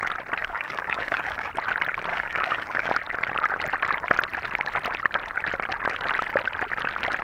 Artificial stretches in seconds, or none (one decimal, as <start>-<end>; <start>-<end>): 0.4-1.5; 2.1-2.9